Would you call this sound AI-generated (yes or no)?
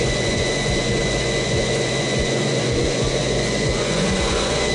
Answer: yes